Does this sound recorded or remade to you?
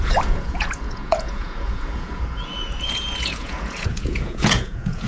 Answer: remade